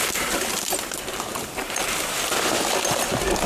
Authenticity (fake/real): real